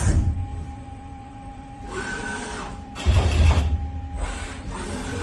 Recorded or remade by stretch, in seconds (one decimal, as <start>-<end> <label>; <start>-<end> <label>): 0.0-0.5 recorded; 0.5-3.6 remade; 3.6-5.2 recorded